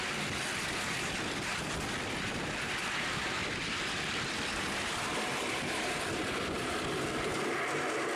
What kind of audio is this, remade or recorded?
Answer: remade